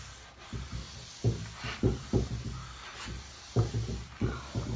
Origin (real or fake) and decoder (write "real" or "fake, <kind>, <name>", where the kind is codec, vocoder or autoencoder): real